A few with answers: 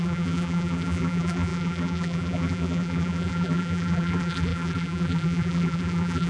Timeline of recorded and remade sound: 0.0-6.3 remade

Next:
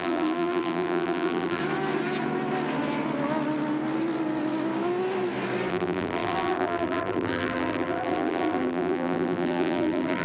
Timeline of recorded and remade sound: 0.0-1.6 remade; 1.6-5.7 recorded; 5.7-10.2 remade

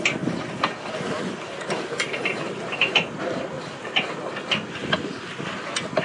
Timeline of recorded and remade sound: 0.0-1.5 recorded; 1.5-4.3 remade; 4.3-6.0 recorded